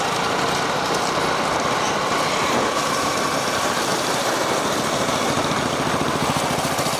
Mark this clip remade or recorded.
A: recorded